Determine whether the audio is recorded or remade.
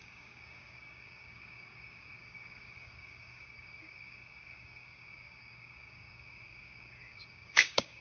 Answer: remade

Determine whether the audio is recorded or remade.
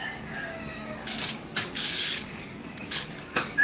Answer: remade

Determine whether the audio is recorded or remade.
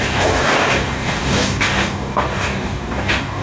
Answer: remade